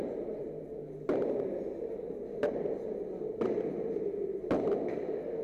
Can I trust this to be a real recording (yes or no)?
yes